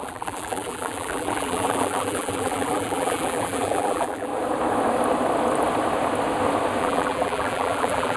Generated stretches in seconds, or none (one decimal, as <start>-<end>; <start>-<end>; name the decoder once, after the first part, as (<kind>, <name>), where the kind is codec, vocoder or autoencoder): 0.0-4.3 (vocoder, BigVGAN v2); 6.8-8.2